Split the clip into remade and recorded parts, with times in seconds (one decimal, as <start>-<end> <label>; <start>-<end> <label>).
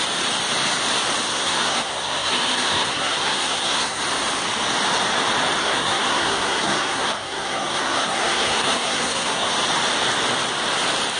0.0-1.3 recorded; 1.3-4.0 remade; 4.0-5.6 recorded; 5.6-9.5 remade; 9.5-11.2 recorded